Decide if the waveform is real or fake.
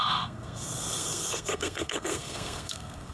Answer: fake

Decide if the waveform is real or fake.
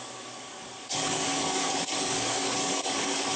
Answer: fake